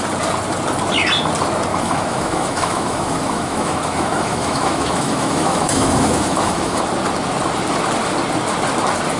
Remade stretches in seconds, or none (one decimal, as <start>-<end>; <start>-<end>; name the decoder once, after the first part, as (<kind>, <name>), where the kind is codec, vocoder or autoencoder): 1.7-6.8 (autoencoder, DAC-VAE)

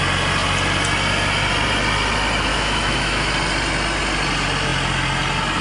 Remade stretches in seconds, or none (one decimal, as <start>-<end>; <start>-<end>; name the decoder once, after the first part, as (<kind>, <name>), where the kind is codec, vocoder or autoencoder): 2.5-3.3 (autoencoder, DAC-VAE)

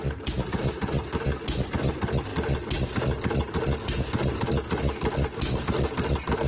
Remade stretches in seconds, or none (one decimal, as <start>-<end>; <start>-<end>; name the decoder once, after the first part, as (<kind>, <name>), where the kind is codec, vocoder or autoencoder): none

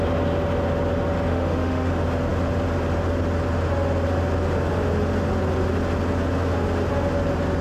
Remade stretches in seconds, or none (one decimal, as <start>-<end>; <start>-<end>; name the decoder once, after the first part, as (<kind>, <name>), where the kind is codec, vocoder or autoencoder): 1.3-1.9 (autoencoder, DAC-VAE)

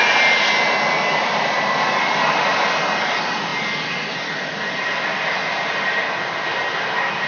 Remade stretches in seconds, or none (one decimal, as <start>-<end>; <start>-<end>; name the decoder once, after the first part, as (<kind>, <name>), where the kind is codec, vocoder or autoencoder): none

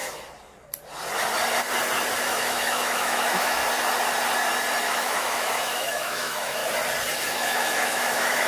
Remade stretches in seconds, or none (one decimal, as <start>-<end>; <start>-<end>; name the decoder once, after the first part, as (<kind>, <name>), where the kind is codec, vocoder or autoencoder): 2.2-3.6 (autoencoder, DAC-VAE); 4.8-6.6; 7.1-8.5

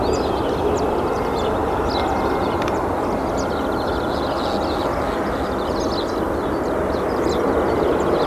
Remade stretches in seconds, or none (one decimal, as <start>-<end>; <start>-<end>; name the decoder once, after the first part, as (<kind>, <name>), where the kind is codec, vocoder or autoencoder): none

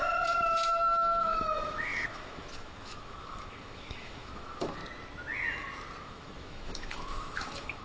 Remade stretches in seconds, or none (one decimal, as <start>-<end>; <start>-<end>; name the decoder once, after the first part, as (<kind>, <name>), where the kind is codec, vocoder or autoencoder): 0.0-4.8 (autoencoder, DAC-VAE); 6.0-7.8